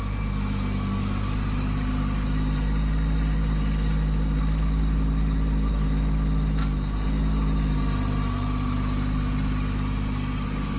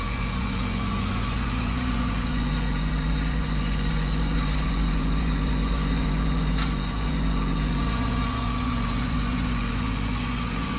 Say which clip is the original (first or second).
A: first